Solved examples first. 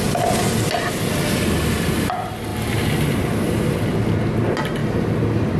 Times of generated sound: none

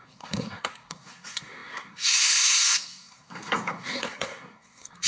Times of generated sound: 0.0-5.1 (codec, SNAC)

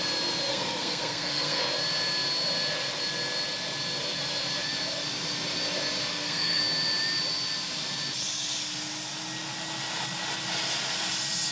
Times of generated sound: 0.5-1.6 (codec, SNAC); 6.1-6.6

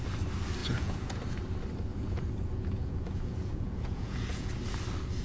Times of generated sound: 0.6-1.2 (vocoder, Vocos); 1.9-4.5